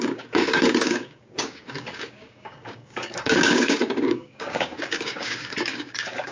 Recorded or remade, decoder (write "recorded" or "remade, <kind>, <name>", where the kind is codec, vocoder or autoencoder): remade, codec, DAC